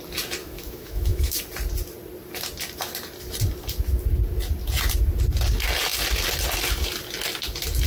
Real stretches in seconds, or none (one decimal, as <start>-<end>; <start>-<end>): 0.0-0.4; 1.4-7.9